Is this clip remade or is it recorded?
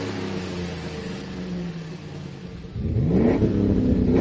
recorded